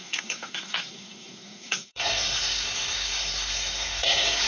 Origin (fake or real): fake